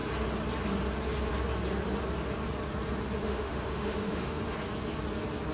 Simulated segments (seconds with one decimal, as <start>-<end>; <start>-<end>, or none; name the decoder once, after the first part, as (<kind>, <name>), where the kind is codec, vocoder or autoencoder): 3.2-4.4 (autoencoder, DAC-VAE)